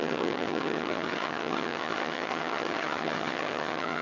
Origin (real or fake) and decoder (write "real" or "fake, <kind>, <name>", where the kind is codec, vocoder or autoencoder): fake, vocoder, HiFi-GAN